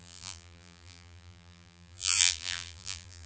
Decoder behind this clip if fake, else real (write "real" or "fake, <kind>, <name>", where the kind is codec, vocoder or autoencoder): fake, vocoder, BigVGAN v2